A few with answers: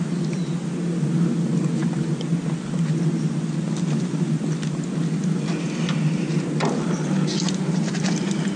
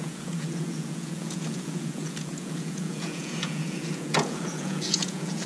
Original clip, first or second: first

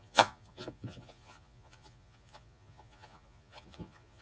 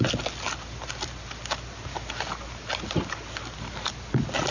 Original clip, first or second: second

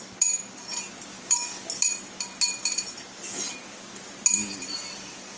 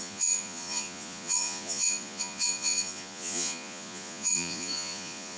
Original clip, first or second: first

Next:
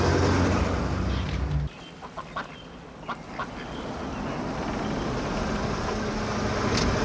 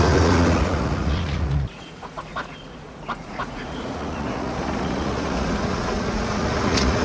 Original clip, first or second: first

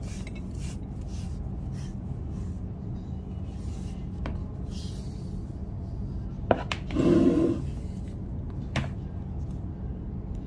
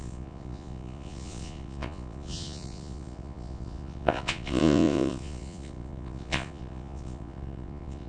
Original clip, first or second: first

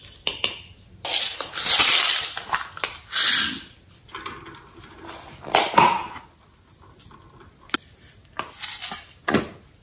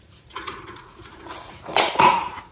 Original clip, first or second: first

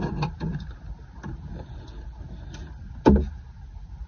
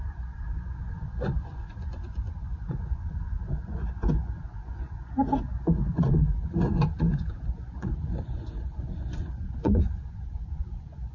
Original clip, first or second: first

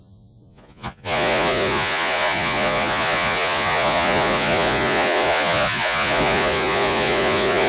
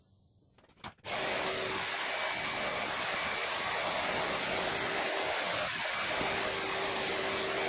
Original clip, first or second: second